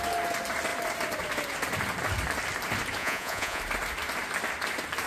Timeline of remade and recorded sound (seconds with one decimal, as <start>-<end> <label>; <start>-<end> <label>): 0.0-3.0 recorded; 3.0-3.6 remade; 3.6-5.1 recorded